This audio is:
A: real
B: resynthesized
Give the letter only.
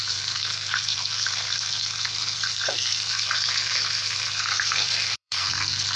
B